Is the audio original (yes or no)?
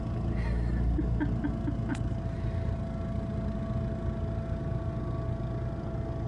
yes